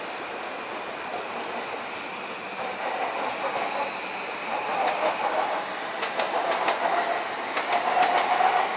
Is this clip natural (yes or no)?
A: yes